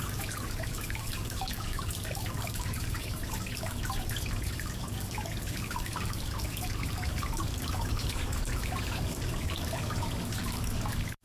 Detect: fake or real fake